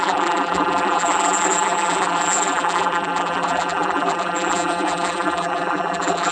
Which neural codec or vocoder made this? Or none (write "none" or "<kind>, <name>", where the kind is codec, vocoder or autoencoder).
vocoder, BigVGAN v2